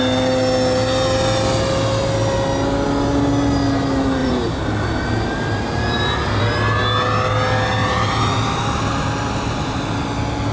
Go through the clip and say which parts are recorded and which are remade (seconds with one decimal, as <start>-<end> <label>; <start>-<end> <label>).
0.0-4.2 recorded; 4.2-6.4 remade; 6.4-7.8 recorded; 7.8-9.8 remade; 9.8-10.5 recorded